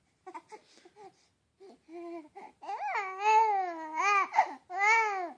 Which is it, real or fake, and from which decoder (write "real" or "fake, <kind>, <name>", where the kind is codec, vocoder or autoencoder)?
real